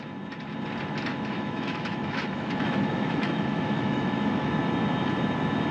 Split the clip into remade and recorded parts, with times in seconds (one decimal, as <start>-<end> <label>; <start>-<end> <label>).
0.0-1.1 recorded; 1.1-4.5 remade; 4.5-5.7 recorded